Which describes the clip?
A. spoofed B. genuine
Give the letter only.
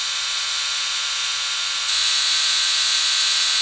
A